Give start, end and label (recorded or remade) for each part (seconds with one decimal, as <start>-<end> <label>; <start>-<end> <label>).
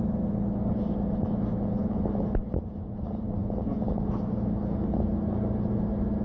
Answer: 0.0-6.2 recorded